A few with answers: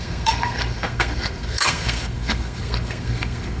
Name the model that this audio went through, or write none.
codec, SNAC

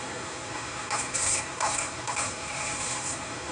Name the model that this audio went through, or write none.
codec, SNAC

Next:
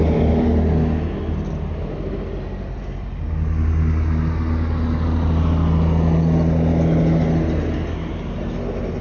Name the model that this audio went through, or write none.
none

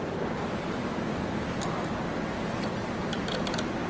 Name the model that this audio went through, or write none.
none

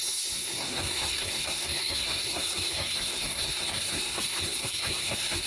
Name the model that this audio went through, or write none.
codec, SNAC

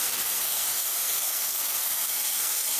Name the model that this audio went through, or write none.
codec, SNAC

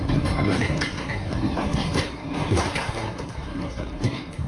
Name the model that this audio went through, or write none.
codec, SNAC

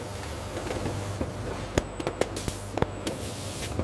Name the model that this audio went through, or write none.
none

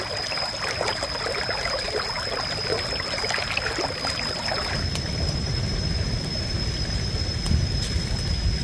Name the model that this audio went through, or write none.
none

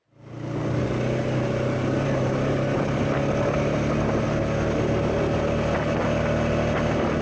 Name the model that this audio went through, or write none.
none